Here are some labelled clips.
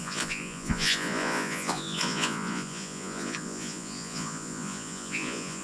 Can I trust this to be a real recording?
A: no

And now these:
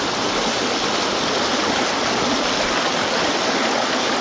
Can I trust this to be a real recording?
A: yes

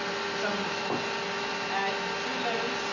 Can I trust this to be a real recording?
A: yes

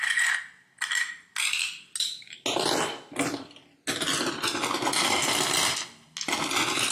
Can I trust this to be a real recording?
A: yes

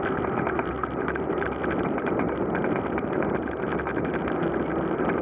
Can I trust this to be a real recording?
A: yes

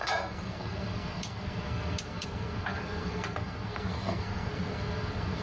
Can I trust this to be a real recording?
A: no